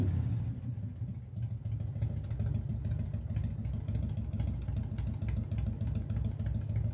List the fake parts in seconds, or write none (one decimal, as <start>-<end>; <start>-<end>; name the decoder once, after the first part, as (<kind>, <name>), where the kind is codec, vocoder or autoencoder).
none